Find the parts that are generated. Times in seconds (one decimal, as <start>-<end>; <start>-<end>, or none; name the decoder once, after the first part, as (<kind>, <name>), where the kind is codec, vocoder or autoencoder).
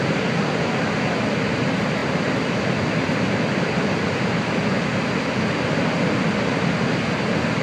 none